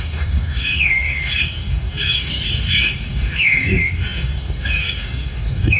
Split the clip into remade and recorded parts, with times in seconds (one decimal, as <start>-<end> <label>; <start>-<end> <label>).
0.0-5.8 remade